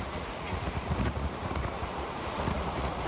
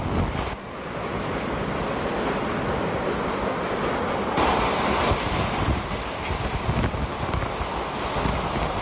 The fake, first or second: first